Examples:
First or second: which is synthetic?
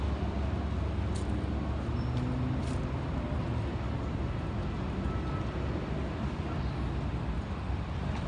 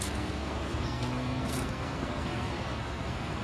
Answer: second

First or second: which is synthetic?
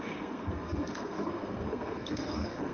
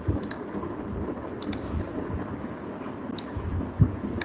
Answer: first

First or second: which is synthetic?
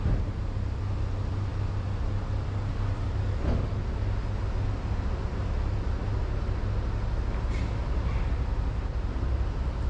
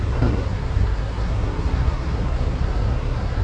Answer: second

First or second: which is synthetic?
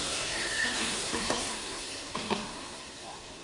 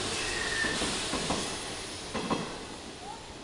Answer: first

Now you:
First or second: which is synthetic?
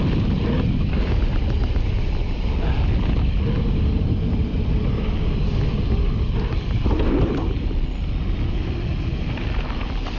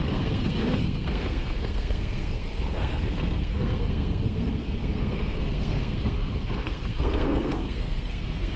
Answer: second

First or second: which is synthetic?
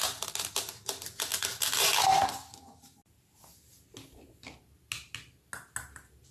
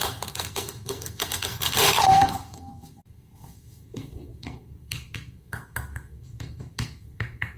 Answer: second